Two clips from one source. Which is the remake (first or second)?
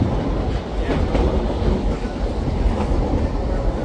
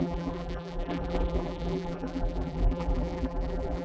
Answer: second